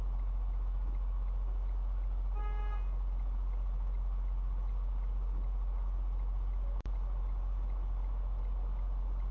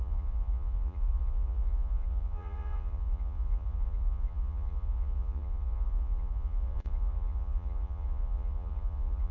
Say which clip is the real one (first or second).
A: first